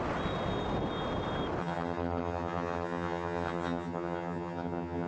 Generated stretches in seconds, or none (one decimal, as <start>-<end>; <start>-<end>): 1.6-5.1